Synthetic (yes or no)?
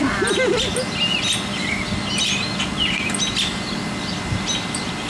no